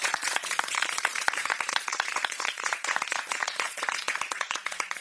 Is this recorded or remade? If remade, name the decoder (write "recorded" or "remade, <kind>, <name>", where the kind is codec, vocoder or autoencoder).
remade, vocoder, Vocos